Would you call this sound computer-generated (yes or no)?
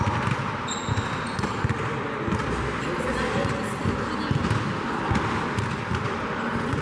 no